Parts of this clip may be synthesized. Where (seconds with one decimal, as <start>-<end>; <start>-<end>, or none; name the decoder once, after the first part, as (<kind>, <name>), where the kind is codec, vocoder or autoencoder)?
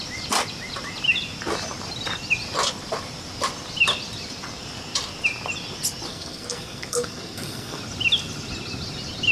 6.1-7.8 (codec, SNAC)